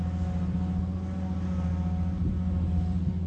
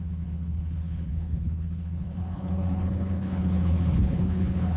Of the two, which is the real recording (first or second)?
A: first